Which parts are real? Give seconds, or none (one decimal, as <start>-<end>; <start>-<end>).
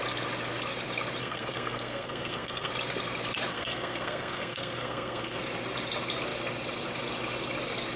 0.0-1.2; 2.7-3.5; 5.4-8.0